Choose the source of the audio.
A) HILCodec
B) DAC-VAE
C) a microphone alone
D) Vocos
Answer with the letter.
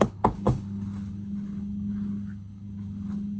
A